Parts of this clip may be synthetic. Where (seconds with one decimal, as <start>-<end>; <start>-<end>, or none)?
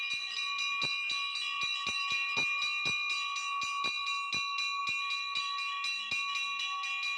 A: none